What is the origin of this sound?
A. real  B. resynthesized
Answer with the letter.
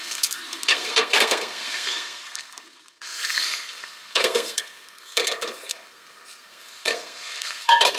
B